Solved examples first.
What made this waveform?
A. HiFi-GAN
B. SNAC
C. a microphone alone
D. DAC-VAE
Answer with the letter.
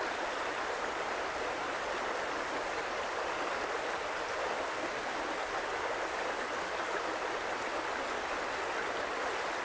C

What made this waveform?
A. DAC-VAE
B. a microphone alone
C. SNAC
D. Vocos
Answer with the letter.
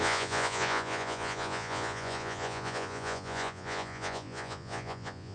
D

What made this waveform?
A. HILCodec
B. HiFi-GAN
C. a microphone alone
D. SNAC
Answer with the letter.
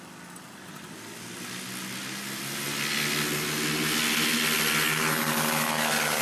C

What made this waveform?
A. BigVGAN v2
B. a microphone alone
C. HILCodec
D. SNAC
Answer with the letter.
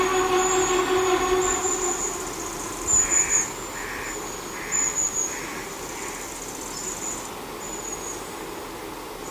B